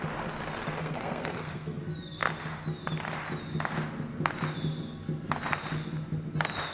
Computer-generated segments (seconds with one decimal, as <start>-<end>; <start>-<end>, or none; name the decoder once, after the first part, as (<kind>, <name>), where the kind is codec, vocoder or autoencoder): 0.8-1.8 (codec, SNAC)